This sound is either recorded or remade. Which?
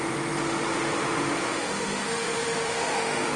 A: remade